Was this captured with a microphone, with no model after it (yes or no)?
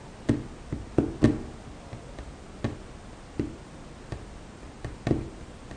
yes